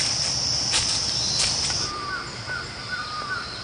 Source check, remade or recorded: recorded